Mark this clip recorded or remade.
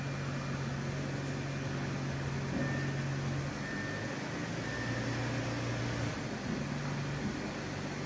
recorded